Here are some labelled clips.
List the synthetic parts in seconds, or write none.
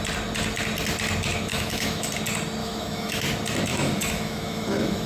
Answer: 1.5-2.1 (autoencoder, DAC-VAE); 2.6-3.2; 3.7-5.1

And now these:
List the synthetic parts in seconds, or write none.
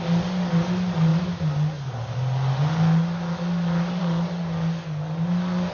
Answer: none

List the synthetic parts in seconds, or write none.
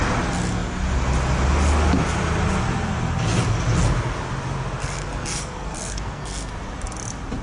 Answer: 4.8-6.5 (codec, SNAC)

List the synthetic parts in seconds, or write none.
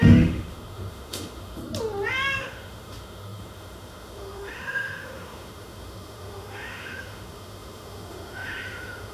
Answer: 0.0-1.6 (autoencoder, DAC-VAE); 2.4-9.1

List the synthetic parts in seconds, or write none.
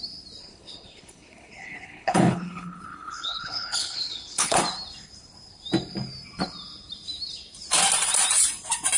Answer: 0.4-4.6 (codec, HILCodec)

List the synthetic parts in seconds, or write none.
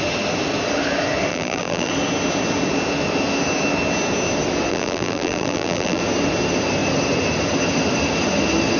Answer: 1.3-1.9 (vocoder, BigVGAN v2); 4.7-6.0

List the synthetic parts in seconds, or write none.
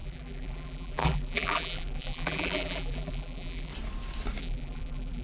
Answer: 0.0-3.7 (vocoder, BigVGAN v2); 4.4-5.2